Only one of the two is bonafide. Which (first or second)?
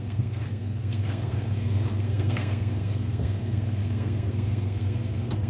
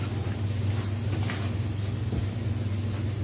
second